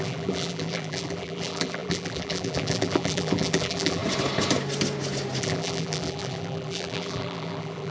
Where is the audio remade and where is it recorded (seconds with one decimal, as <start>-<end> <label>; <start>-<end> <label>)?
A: 0.0-4.0 remade; 4.0-5.4 recorded; 5.4-7.9 remade